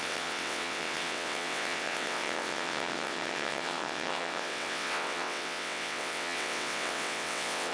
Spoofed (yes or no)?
yes